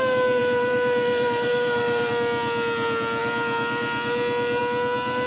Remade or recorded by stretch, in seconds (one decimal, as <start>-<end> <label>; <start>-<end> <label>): 0.0-0.4 recorded; 0.4-2.1 remade; 2.1-5.3 recorded